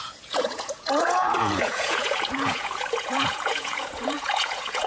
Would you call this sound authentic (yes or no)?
no